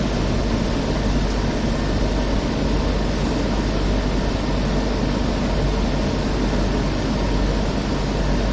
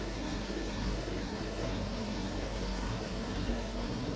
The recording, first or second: first